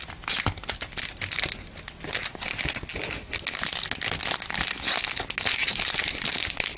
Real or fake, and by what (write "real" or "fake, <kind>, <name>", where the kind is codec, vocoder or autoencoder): real